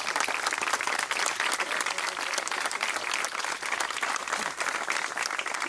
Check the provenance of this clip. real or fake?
real